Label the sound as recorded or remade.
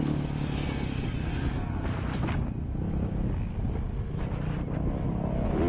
recorded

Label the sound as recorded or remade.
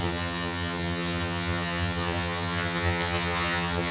remade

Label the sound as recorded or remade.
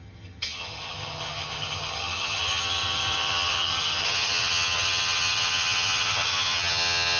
remade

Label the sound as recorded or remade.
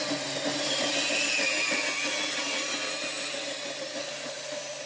recorded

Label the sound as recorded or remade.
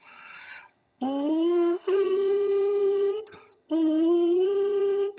remade